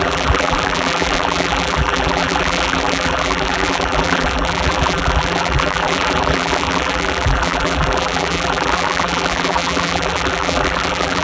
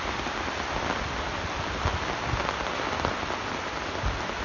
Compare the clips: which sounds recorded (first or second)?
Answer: second